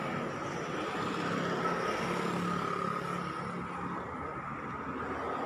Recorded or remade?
recorded